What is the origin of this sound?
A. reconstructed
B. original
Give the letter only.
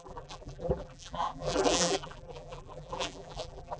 A